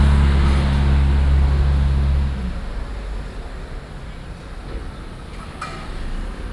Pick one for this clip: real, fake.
real